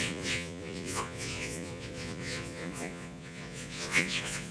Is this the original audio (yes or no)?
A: no